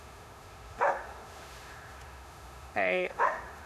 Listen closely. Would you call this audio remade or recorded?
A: remade